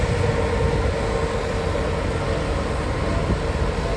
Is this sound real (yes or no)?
yes